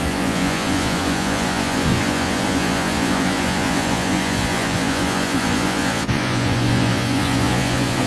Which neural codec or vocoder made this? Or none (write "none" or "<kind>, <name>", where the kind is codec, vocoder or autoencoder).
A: vocoder, Vocos